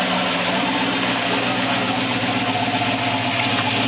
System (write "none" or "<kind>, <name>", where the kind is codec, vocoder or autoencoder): none